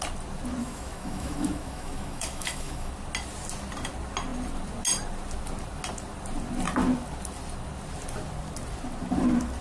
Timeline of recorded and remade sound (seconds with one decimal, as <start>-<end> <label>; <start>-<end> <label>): 0.0-0.6 recorded; 0.6-2.9 remade; 2.9-9.6 recorded